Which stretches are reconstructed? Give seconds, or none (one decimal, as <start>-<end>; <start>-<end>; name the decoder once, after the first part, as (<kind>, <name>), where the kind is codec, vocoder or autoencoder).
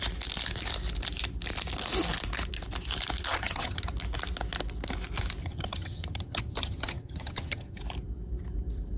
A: 3.3-3.8 (vocoder, HiFi-GAN); 5.4-7.8